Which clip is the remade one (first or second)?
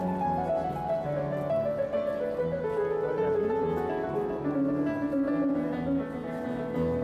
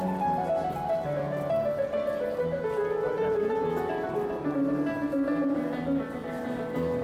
second